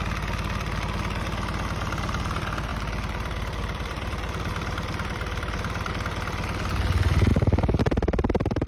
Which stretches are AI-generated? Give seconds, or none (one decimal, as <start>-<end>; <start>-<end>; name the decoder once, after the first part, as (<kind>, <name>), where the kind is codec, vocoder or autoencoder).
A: 2.7-5.9 (vocoder, BigVGAN v2); 7.3-7.8